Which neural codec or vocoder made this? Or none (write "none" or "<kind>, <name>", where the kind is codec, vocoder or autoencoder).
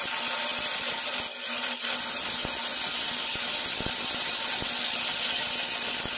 none